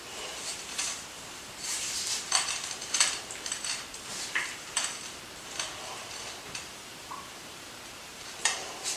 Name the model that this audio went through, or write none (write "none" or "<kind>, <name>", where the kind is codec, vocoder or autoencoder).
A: vocoder, BigVGAN v2